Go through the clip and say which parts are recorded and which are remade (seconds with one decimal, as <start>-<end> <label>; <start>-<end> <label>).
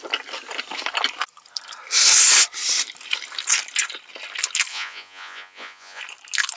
0.0-4.7 recorded; 4.7-6.0 remade; 6.0-6.6 recorded